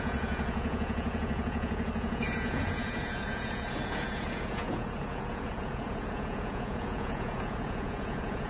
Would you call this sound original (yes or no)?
no